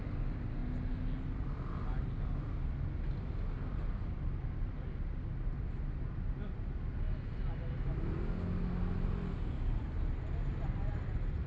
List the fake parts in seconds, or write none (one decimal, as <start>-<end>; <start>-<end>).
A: none